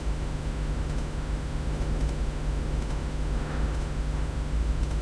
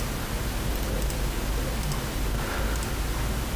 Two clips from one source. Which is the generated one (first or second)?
first